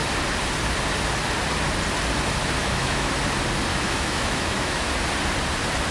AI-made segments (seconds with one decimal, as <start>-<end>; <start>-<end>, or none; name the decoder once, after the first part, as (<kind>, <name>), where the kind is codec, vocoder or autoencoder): 2.6-3.1 (autoencoder, DAC-VAE); 3.7-4.9